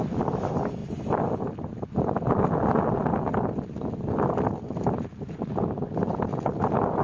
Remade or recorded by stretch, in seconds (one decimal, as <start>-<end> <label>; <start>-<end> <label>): 0.0-7.0 recorded